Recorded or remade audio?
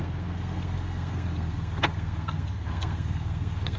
remade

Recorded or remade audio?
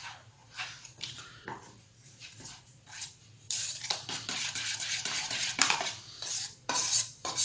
remade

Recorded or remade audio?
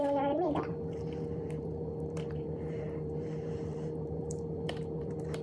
remade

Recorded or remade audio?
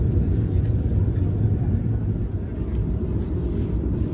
remade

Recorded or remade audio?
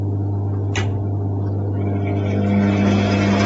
recorded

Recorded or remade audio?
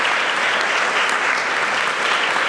recorded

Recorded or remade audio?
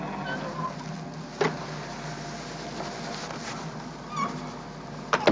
recorded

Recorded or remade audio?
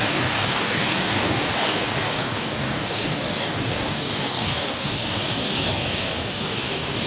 remade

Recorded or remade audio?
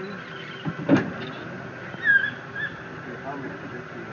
recorded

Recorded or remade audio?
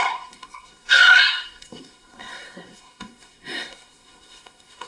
remade